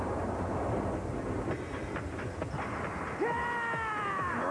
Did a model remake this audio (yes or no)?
no